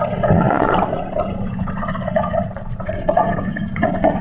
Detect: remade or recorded remade